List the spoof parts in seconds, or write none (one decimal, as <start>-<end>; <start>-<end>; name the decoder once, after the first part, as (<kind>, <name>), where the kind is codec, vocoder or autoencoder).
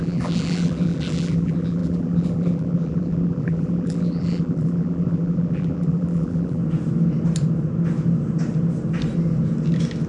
0.0-6.6 (vocoder, BigVGAN v2)